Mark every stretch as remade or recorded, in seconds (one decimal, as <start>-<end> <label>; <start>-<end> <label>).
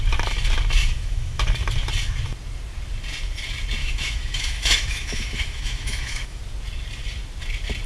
0.0-0.8 recorded; 0.8-1.4 remade; 1.4-3.8 recorded; 3.8-6.4 remade; 6.4-7.9 recorded